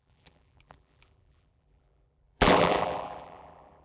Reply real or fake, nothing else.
fake